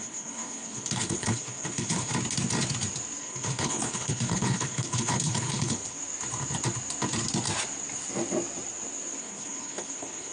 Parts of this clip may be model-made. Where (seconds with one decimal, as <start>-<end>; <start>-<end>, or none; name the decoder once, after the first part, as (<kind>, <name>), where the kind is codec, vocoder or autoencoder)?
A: 0.0-2.1 (codec, HILCodec); 3.2-6.0; 9.2-10.3